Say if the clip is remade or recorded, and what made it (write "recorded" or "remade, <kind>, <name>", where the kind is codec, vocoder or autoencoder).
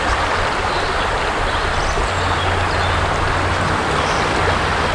recorded